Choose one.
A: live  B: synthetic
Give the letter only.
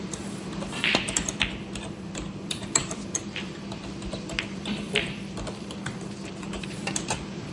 B